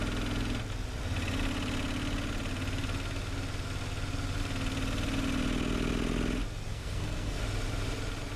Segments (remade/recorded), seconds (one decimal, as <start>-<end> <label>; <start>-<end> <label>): 0.0-6.7 recorded; 6.7-7.4 remade; 7.4-8.4 recorded